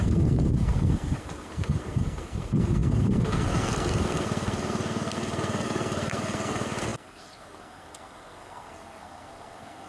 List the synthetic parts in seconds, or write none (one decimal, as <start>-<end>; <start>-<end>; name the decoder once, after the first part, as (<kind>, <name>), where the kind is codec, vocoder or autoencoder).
0.0-9.9 (codec, SNAC)